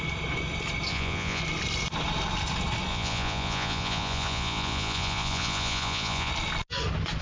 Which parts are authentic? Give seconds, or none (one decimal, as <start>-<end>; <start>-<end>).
0.0-0.9; 1.4-2.9; 6.3-7.2